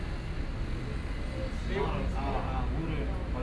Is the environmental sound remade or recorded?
recorded